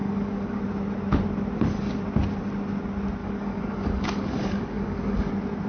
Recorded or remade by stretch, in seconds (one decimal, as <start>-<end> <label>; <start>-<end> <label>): 0.0-0.6 remade; 0.6-3.2 recorded; 3.2-5.3 remade; 5.3-5.7 recorded